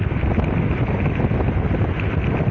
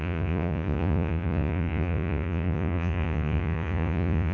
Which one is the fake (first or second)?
second